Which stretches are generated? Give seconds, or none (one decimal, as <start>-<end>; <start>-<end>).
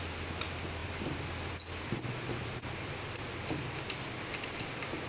none